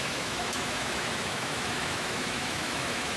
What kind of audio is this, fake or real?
fake